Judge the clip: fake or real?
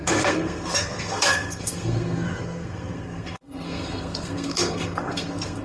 fake